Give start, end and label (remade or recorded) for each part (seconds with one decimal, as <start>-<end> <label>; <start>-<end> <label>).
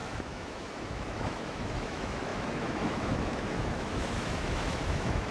0.0-5.3 remade